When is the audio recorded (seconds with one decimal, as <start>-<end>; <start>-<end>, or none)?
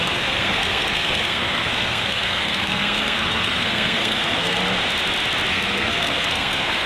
4.6-5.5